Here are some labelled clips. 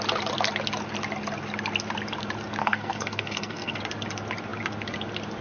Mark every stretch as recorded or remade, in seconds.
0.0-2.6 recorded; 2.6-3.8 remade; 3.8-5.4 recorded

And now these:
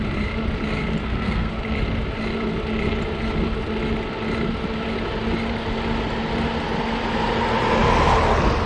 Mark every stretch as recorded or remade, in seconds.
0.0-1.0 recorded; 1.0-1.5 remade; 1.5-8.7 recorded